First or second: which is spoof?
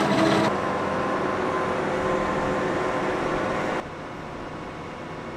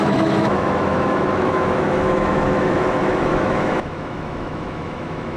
second